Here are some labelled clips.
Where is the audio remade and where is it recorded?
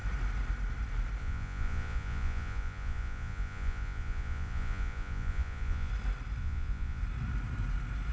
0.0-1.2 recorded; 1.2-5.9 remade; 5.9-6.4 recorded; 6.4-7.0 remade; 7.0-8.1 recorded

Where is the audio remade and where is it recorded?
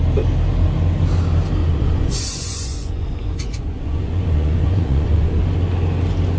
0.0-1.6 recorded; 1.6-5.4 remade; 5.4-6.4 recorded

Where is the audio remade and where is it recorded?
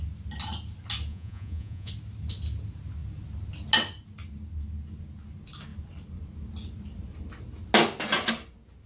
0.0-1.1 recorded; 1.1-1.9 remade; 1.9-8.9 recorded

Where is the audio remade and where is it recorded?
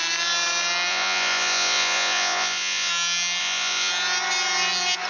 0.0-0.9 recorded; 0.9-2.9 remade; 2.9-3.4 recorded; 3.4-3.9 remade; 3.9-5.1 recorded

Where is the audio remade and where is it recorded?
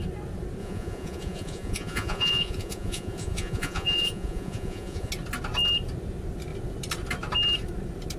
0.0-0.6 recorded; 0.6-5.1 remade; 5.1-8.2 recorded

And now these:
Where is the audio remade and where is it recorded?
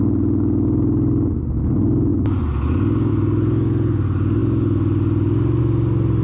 0.0-6.2 recorded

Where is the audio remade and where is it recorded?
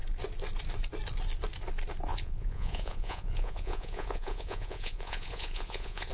0.0-2.1 recorded; 2.1-6.1 remade